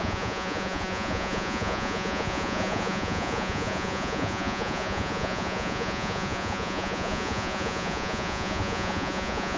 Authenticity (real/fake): fake